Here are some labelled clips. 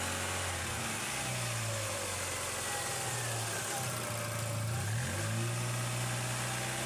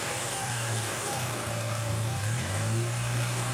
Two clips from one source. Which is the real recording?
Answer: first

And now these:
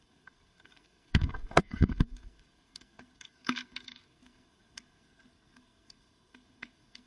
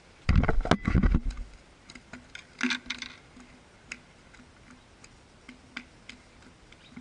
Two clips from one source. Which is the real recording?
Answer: second